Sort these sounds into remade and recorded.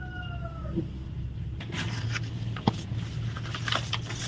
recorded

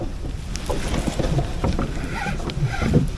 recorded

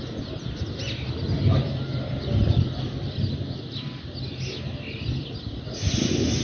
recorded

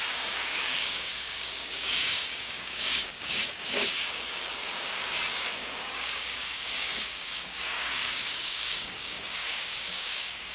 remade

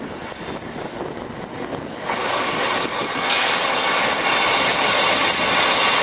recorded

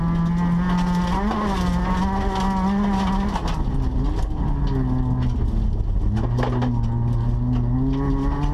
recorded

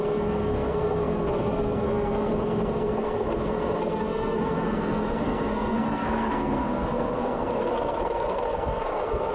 remade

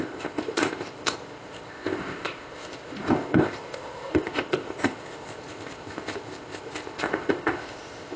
remade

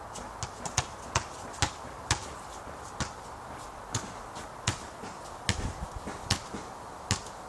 recorded